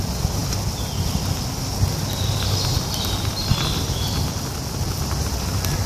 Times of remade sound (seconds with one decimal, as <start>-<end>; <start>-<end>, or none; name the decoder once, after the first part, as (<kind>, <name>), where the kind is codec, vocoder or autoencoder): none